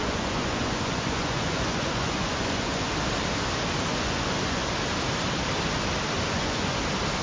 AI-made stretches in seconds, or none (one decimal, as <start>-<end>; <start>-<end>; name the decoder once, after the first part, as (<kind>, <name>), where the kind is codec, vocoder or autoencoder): 0.0-2.9 (vocoder, Vocos); 3.9-4.7; 6.3-6.8

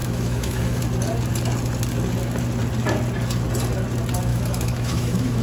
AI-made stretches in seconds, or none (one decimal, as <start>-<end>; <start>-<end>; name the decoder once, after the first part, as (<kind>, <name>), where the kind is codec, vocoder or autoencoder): 0.0-0.8 (autoencoder, DAC-VAE); 4.3-5.4